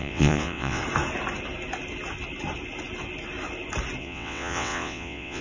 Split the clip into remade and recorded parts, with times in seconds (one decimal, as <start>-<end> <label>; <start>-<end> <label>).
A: 0.0-0.8 remade; 0.8-4.0 recorded; 4.0-5.4 remade